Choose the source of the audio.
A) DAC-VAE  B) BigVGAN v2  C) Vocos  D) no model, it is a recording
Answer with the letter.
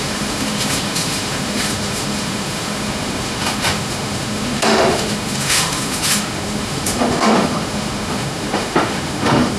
A